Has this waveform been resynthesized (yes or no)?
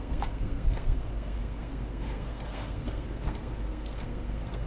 yes